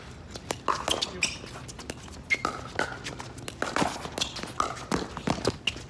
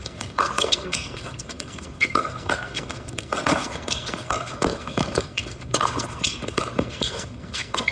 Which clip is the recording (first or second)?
first